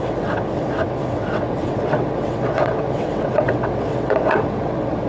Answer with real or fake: fake